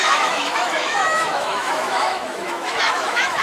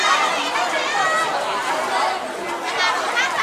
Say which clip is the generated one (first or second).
first